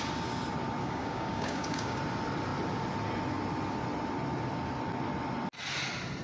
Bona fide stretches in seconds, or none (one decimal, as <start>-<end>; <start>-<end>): 0.0-0.8; 2.0-6.2